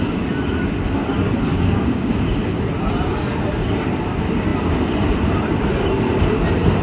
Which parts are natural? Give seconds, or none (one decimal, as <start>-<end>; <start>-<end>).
0.0-1.5; 2.1-6.8